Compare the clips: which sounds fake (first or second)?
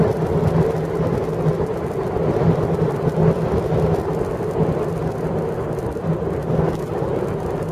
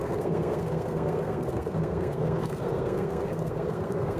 second